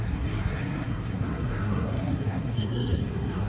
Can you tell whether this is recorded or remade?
remade